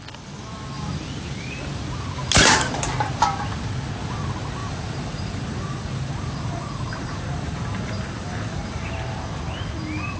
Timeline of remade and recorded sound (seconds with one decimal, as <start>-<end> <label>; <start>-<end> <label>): 0.0-4.6 recorded; 4.6-8.9 remade; 8.9-10.2 recorded